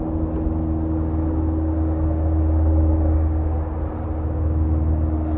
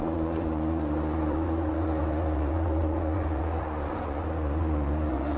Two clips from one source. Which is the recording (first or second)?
first